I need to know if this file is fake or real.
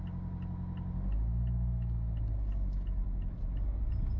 real